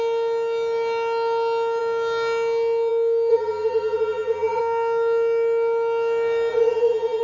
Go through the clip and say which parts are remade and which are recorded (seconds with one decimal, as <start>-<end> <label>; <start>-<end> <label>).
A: 0.0-3.3 recorded; 3.3-4.6 remade; 4.6-6.5 recorded; 6.5-7.2 remade